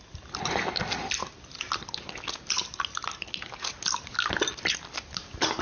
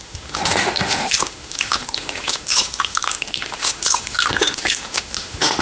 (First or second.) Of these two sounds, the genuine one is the first